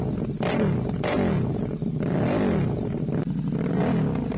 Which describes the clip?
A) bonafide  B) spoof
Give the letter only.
A